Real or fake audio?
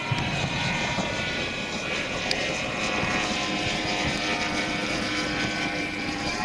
fake